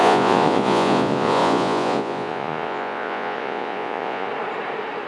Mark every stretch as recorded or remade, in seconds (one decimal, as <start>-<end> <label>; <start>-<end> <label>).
0.0-4.3 remade; 4.3-5.1 recorded